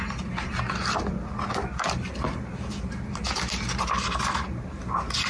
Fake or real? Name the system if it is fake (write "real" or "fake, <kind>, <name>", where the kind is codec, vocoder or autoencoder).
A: real